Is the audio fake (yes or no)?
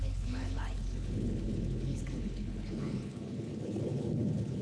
yes